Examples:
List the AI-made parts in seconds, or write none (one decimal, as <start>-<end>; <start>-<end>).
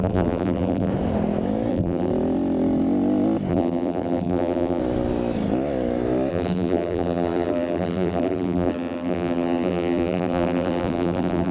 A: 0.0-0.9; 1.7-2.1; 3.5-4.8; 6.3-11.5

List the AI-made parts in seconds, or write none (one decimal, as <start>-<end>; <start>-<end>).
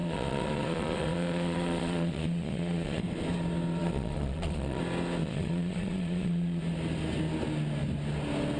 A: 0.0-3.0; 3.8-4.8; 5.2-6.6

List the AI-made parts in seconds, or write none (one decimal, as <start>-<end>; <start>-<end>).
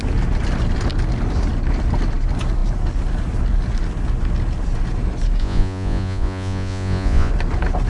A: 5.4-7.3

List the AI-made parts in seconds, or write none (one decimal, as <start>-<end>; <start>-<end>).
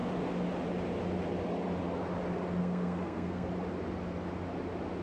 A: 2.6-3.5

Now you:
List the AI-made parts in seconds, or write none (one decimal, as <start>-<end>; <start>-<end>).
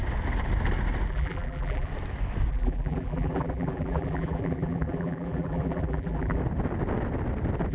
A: 1.1-1.9; 2.5-6.4